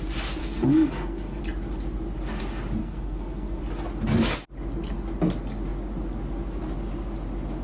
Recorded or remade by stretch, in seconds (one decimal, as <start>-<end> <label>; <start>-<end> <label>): 0.0-0.4 recorded; 0.4-1.4 remade; 1.4-2.8 recorded; 2.8-3.6 remade; 3.6-7.6 recorded